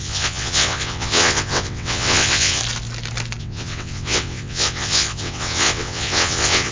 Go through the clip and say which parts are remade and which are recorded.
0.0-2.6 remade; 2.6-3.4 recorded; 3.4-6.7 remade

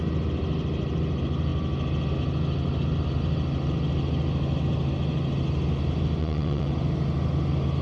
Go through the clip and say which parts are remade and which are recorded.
0.0-6.2 recorded; 6.2-6.7 remade; 6.7-7.8 recorded

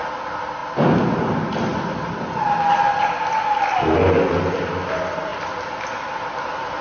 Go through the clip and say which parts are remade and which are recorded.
0.0-6.8 recorded

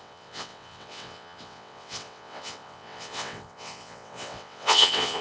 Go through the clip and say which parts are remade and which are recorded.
0.0-5.2 remade

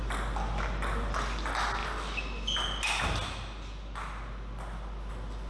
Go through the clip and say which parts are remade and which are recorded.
0.0-5.5 recorded

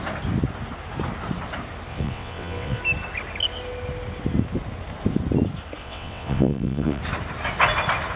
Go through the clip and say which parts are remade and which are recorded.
0.0-1.9 recorded; 1.9-2.8 remade; 2.8-5.8 recorded; 5.8-7.0 remade; 7.0-8.2 recorded

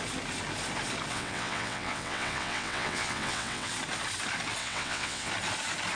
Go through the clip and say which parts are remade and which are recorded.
0.0-1.1 recorded; 1.1-3.7 remade; 3.7-4.6 recorded; 4.6-5.3 remade; 5.3-6.0 recorded

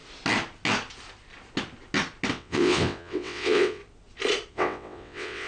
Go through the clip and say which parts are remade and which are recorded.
0.0-2.3 recorded; 2.3-3.8 remade; 3.8-4.5 recorded; 4.5-5.5 remade